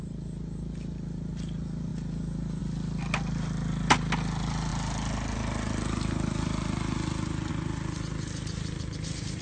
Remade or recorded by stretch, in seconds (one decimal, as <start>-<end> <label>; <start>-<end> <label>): 0.0-9.4 recorded